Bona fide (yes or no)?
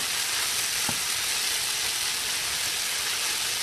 yes